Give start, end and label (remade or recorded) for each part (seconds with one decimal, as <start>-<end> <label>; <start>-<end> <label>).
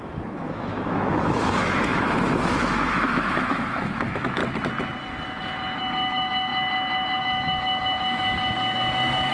0.0-4.4 remade; 4.4-5.8 recorded; 5.8-6.5 remade; 6.5-7.2 recorded; 7.2-9.3 remade